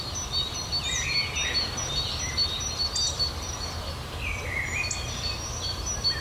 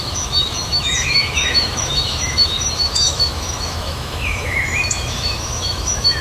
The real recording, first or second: first